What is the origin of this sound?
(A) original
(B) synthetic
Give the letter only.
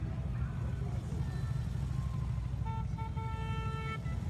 A